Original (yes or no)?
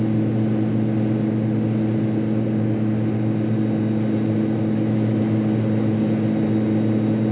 yes